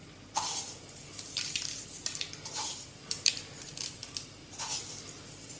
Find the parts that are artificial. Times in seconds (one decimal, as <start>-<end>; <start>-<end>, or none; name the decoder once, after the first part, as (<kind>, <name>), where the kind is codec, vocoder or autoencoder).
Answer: 0.0-2.3 (vocoder, BigVGAN v2)